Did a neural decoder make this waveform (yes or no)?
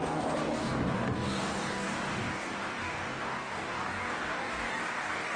yes